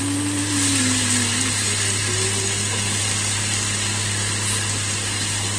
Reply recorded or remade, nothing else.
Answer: recorded